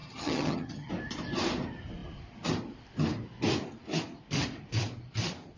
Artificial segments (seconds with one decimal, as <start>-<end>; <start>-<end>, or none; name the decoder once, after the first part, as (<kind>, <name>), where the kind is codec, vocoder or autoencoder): 0.0-0.9 (vocoder, HiFi-GAN)